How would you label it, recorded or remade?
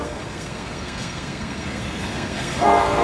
remade